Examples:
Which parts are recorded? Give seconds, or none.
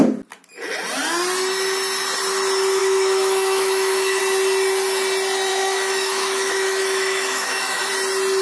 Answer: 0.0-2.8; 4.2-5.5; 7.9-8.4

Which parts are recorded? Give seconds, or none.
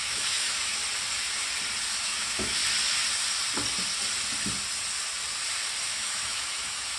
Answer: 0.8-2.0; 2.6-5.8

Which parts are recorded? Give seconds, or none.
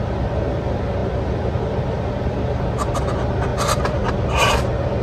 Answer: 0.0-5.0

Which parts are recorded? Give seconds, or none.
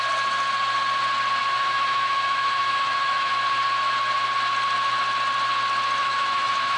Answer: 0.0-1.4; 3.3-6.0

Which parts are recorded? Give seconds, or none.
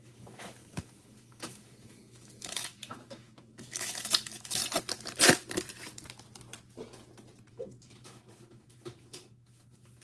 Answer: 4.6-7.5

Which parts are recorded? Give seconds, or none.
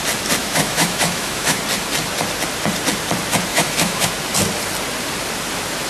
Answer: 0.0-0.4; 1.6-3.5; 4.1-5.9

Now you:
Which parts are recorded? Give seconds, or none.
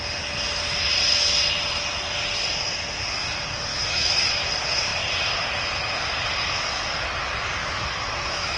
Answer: 0.0-3.7; 4.3-7.6